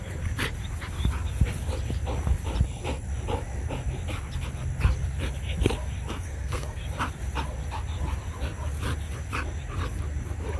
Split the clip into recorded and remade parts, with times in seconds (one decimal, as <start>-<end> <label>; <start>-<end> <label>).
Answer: 0.0-6.1 recorded; 6.1-6.8 remade; 6.8-10.6 recorded

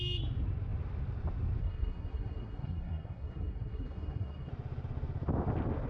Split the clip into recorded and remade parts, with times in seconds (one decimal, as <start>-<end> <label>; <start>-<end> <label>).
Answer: 0.0-1.6 recorded; 1.6-4.5 remade; 4.5-5.9 recorded

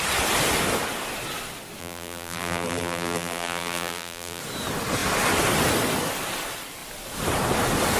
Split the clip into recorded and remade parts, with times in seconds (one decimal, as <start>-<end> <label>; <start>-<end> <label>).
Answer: 0.0-1.8 recorded; 1.8-4.4 remade; 4.4-8.0 recorded

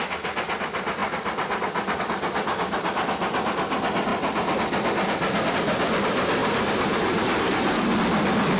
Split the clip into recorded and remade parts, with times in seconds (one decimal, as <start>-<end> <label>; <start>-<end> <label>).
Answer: 0.0-6.4 recorded; 6.4-7.9 remade; 7.9-8.6 recorded

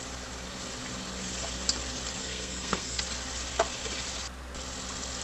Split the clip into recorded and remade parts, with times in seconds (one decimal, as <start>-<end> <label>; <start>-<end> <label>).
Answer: 0.0-2.2 recorded; 2.2-3.0 remade; 3.0-5.2 recorded

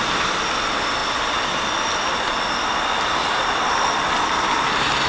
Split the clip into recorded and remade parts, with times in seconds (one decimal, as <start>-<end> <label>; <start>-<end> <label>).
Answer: 0.0-5.1 recorded

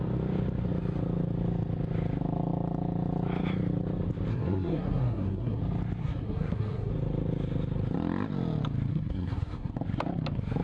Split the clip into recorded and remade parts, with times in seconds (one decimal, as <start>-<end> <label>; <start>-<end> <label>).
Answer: 0.0-4.3 recorded; 4.3-5.6 remade; 5.6-6.0 recorded; 6.0-6.9 remade; 6.9-8.9 recorded; 8.9-9.7 remade; 9.7-10.6 recorded

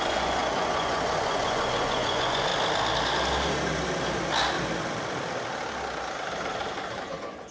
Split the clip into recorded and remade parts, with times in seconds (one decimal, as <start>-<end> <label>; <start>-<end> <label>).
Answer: 0.0-2.5 remade; 2.5-7.0 recorded; 7.0-7.5 remade